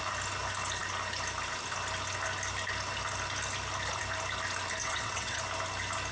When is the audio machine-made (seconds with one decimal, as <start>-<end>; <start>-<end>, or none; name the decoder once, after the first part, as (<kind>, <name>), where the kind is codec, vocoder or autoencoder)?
4.8-5.4 (vocoder, WaveNeXt)